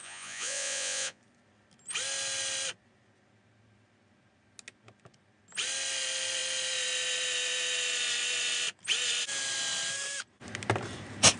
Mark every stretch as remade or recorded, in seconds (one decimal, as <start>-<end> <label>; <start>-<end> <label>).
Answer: 0.0-1.2 remade; 1.2-11.4 recorded